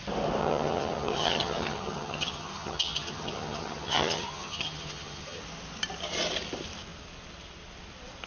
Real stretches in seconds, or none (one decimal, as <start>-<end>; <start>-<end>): 0.0-0.4; 5.4-8.3